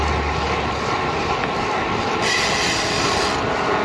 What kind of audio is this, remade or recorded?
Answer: recorded